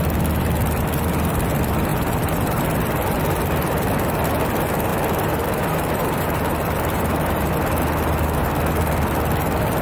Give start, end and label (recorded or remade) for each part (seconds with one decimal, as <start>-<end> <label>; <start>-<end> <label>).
0.0-1.9 recorded; 1.9-2.6 remade; 2.6-4.9 recorded; 4.9-7.5 remade; 7.5-9.8 recorded